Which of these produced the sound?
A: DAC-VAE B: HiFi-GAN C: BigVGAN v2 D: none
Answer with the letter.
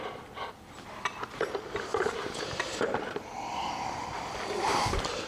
C